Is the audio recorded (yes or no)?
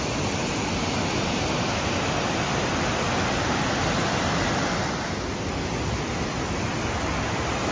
yes